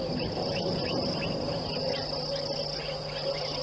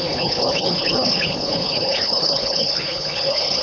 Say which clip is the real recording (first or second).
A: first